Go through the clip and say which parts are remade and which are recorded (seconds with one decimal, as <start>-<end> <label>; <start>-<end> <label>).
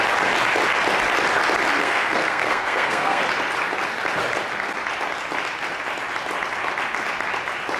0.0-1.8 recorded; 1.8-3.2 remade; 3.2-7.8 recorded